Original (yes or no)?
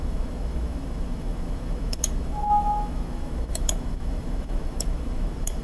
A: no